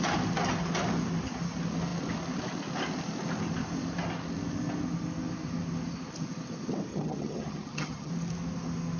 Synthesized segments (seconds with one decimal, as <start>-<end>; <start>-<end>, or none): 6.9-8.1

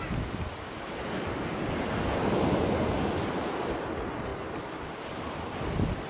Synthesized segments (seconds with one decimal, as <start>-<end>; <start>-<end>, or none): none

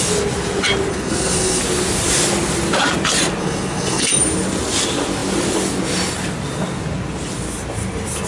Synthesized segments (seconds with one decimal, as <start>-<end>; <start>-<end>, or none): 0.9-1.6; 3.4-4.1

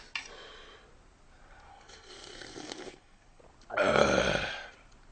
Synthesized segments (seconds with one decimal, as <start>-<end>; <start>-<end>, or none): 1.7-3.4

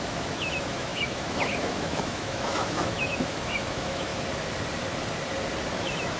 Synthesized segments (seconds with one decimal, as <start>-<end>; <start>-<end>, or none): 0.0-4.1; 5.7-6.2